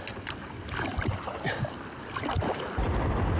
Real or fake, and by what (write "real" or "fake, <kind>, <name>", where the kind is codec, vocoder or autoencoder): real